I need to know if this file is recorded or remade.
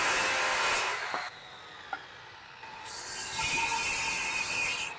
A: recorded